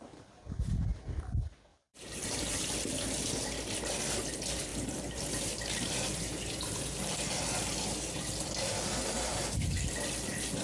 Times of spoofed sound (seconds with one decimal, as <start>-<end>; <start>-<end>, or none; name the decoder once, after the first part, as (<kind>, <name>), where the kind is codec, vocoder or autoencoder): 1.7-2.4 (vocoder, BigVGAN v2); 4.7-7.2; 9.3-9.9